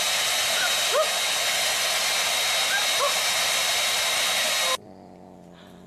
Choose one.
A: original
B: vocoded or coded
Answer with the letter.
A